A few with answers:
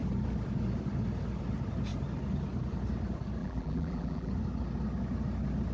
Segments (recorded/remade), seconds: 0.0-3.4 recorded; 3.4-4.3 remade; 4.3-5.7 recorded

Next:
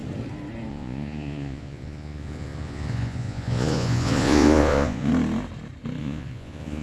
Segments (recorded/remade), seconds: 0.0-0.7 recorded; 0.7-5.1 remade; 5.1-6.0 recorded; 6.0-6.8 remade

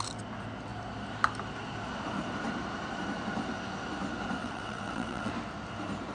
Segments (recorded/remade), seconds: 0.0-4.4 recorded; 4.4-5.3 remade; 5.3-6.1 recorded

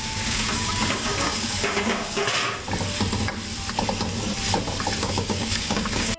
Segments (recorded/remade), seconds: 0.0-2.2 remade; 2.2-5.0 recorded; 5.0-6.2 remade

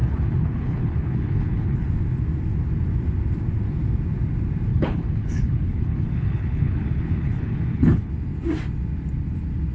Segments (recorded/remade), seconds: 0.0-1.9 remade; 1.9-4.7 recorded; 4.7-8.1 remade; 8.1-9.7 recorded